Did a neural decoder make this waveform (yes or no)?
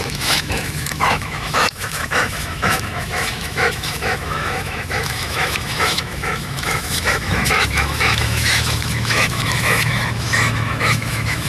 yes